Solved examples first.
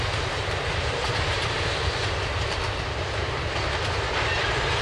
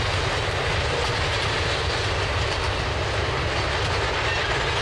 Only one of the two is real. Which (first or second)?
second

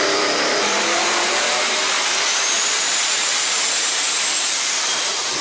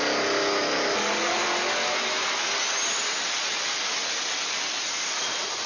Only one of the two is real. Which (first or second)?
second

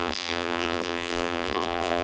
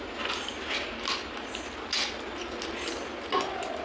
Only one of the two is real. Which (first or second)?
second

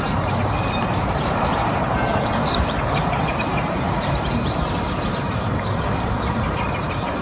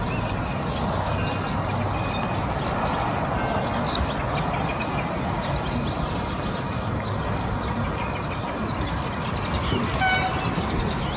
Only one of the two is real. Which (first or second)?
second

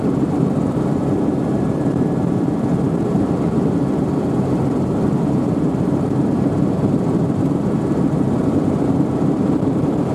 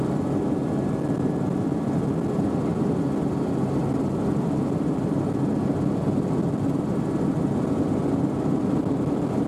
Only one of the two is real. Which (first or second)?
second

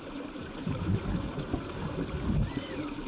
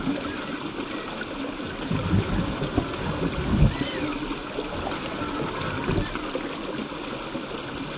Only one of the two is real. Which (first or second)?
second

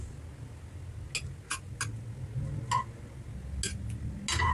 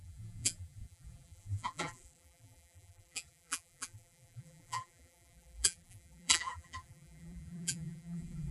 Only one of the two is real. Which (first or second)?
first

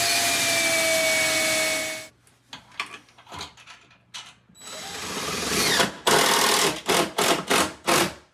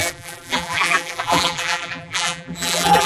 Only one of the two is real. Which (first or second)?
first